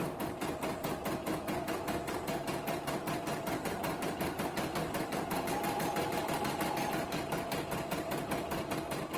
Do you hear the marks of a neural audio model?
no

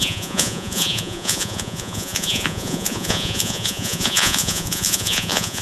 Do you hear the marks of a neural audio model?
yes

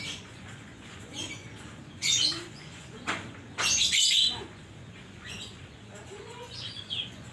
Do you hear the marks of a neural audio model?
yes